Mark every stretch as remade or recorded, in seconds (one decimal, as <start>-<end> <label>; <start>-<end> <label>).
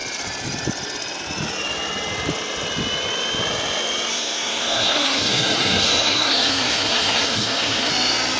0.0-4.1 recorded; 4.1-7.9 remade; 7.9-8.4 recorded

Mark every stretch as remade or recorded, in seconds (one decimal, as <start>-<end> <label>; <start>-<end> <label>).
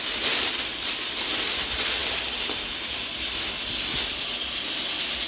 0.0-5.3 recorded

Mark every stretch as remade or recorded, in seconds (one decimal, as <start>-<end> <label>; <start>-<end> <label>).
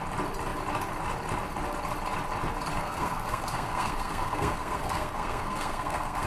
0.0-2.8 recorded; 2.8-6.3 remade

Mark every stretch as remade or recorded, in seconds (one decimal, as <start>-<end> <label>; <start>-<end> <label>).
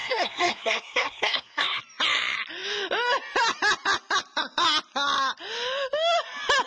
0.0-1.8 remade; 1.8-6.7 recorded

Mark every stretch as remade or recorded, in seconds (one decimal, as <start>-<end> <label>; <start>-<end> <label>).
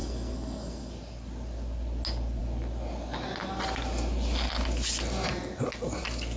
0.0-0.9 remade; 0.9-6.4 recorded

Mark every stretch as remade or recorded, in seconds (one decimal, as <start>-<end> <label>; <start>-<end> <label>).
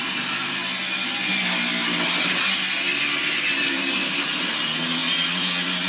0.0-5.9 recorded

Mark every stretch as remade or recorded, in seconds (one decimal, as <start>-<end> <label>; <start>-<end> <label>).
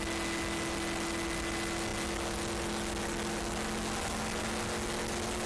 0.0-5.5 recorded